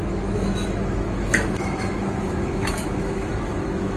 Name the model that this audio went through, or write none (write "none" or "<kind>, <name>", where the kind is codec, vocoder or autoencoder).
autoencoder, DAC-VAE